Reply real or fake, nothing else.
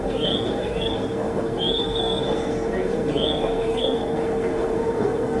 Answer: fake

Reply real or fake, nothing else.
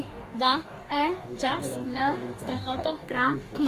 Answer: fake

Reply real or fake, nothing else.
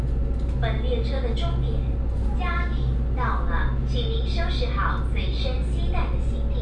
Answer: real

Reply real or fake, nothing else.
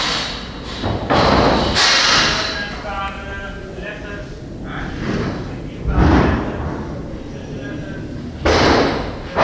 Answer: real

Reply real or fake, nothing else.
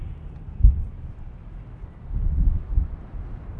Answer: real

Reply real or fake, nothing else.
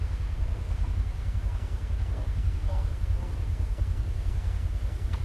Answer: fake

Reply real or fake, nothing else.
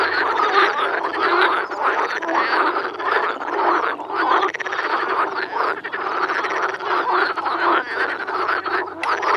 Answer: real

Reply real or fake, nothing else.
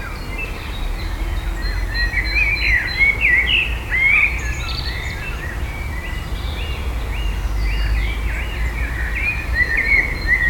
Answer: real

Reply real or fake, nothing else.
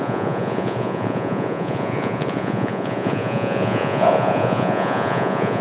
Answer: fake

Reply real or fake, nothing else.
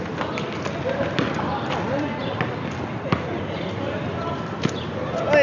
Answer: real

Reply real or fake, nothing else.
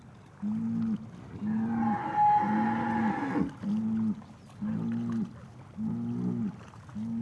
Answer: real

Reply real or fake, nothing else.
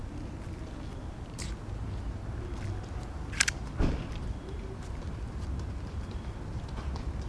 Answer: real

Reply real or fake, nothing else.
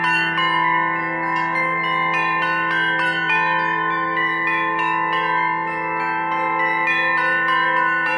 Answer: fake